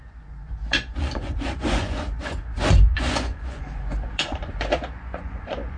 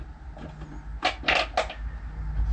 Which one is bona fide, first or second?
second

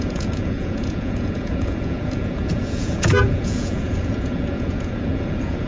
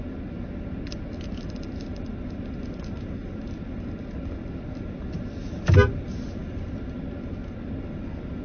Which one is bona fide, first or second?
second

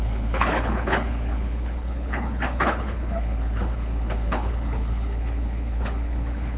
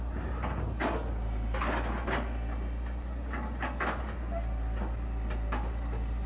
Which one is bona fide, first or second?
second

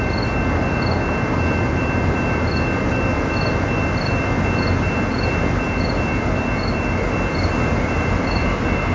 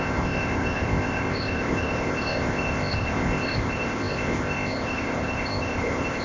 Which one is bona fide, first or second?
first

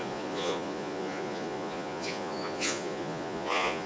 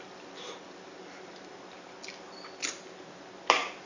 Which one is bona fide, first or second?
second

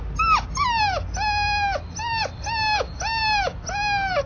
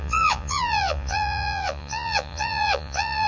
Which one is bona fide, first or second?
first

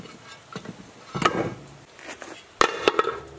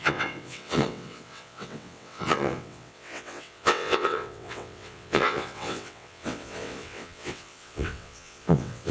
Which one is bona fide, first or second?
first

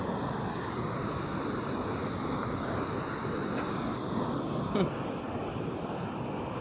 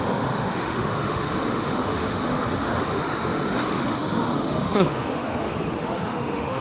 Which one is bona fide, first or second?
first